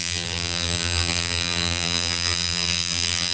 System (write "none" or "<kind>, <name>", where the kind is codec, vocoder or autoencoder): vocoder, BigVGAN v2